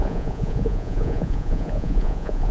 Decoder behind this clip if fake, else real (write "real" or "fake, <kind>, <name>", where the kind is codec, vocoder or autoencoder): fake, vocoder, Vocos